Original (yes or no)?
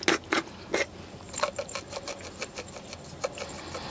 yes